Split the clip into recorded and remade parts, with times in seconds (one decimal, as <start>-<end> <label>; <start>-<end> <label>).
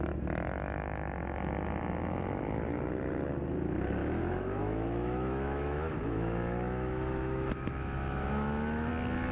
0.0-4.0 recorded; 4.0-8.9 remade; 8.9-9.3 recorded